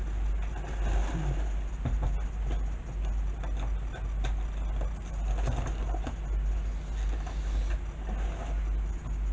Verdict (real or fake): real